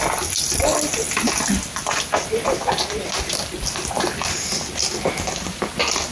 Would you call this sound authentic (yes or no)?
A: yes